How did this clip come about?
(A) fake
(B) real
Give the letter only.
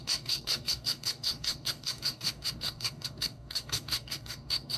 A